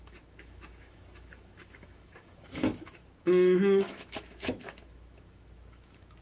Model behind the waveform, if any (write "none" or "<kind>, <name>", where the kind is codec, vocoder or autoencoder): autoencoder, DAC-VAE